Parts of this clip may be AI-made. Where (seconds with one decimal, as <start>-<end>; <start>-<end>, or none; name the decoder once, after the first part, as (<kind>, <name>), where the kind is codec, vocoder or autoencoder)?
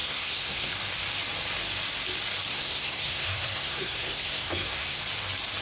0.0-0.7 (codec, SNAC); 2.5-5.0